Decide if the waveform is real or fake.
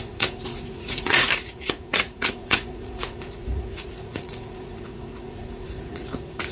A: fake